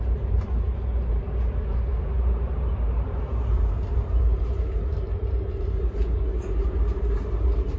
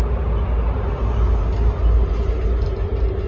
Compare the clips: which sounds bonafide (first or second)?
second